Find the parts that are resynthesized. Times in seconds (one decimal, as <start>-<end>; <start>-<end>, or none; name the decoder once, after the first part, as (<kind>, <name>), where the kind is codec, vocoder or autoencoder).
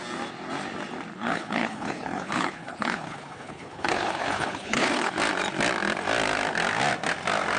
1.1-5.1 (codec, HILCodec)